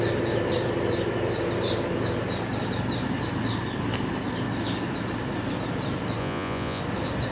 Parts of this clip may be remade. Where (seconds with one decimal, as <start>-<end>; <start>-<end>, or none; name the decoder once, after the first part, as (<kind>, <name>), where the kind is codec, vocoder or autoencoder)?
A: 6.2-6.8 (vocoder, Vocos)